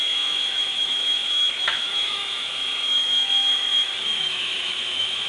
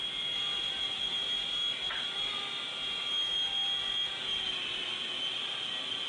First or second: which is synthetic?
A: first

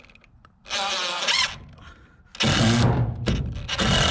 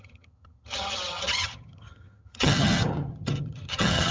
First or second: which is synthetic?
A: second